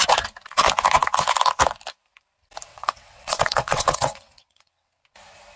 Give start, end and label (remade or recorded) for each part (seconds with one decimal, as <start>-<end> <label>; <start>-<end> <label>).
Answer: 0.0-2.7 recorded; 2.7-5.0 remade; 5.0-5.6 recorded